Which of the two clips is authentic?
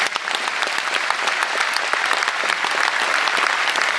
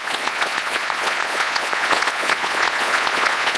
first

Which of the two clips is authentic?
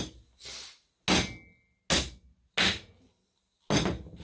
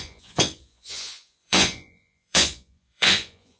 first